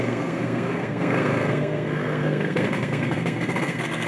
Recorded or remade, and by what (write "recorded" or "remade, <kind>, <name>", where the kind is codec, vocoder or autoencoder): remade, codec, SNAC